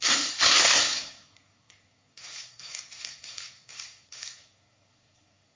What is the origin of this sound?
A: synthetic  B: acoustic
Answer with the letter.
A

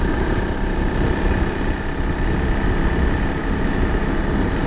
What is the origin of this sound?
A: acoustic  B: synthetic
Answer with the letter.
A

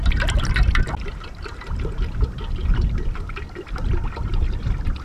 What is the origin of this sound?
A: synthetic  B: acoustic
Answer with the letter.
B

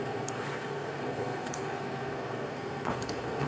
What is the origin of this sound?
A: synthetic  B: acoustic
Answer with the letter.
A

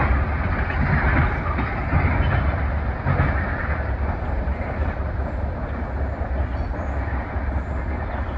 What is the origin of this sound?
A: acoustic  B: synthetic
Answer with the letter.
A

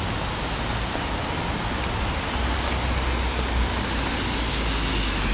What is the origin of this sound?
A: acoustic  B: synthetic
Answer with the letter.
A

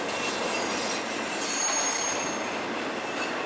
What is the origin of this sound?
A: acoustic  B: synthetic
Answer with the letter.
A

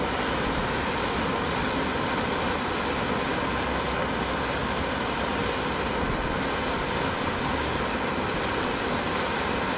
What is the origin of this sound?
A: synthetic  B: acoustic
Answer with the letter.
B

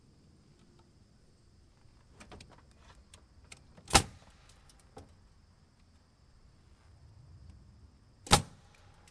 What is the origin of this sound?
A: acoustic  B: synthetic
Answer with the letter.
A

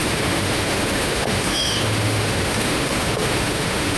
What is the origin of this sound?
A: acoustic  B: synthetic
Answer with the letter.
B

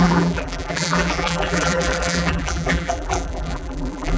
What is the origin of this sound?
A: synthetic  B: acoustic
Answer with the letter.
A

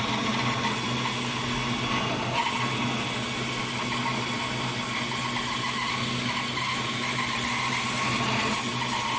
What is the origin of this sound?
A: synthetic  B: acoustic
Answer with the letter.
B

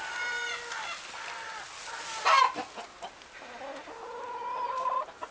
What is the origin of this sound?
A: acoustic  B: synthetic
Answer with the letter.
A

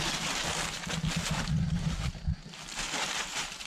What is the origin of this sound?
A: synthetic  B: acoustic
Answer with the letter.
B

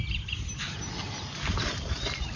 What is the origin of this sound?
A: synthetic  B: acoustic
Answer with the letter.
B